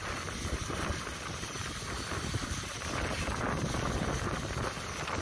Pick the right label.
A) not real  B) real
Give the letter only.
B